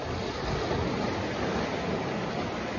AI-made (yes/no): no